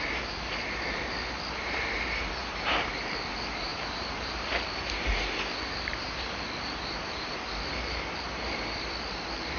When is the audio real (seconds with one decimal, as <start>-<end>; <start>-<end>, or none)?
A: 0.0-2.4; 2.9-3.7; 5.5-9.6